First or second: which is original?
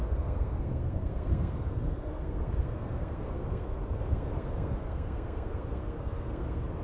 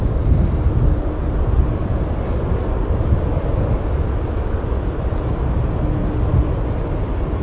second